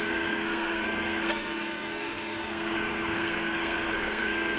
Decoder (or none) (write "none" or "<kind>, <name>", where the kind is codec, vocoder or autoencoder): codec, SNAC